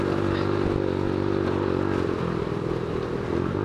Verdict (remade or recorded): recorded